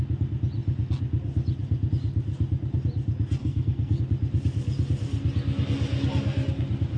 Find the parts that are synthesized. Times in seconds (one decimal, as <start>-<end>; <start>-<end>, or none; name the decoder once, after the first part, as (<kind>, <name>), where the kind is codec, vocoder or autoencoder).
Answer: 3.4-4.0 (codec, SNAC)